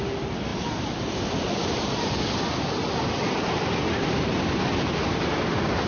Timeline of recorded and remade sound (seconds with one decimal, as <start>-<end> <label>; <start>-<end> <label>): 0.0-5.9 recorded